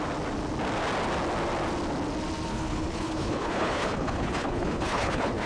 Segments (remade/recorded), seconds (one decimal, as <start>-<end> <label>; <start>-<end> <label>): 0.0-2.5 recorded; 2.5-5.5 remade